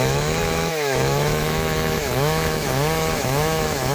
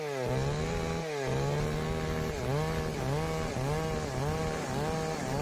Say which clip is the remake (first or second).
first